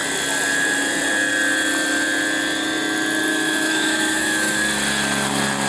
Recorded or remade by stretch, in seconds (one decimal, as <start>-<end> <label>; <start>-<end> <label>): 0.0-3.3 recorded; 3.3-4.6 remade; 4.6-5.7 recorded